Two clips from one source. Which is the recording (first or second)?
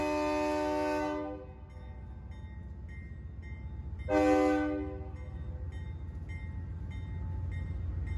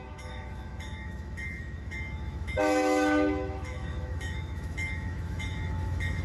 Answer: first